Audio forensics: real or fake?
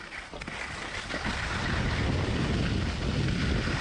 real